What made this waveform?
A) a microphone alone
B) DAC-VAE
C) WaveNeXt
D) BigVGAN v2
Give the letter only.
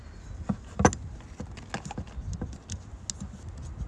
A